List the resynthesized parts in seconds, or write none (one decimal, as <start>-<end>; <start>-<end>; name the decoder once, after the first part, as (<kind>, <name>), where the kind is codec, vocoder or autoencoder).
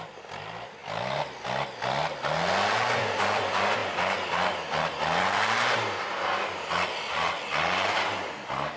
none